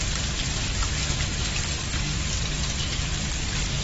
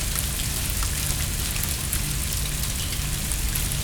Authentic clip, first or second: second